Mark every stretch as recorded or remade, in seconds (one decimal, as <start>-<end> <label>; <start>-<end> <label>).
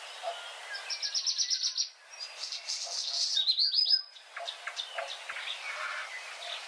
0.0-6.7 recorded